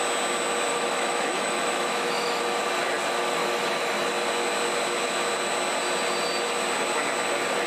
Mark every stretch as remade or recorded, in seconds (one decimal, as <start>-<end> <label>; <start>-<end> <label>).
0.0-0.7 recorded; 0.7-2.4 remade; 2.4-3.4 recorded; 3.4-4.1 remade; 4.1-7.7 recorded